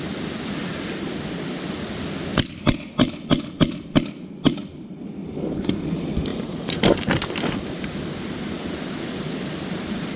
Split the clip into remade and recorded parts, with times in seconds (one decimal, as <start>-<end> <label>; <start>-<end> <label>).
0.0-6.3 recorded; 6.3-6.8 remade; 6.8-10.2 recorded